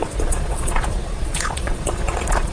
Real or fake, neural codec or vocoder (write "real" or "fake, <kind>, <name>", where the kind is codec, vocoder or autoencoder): fake, vocoder, Vocos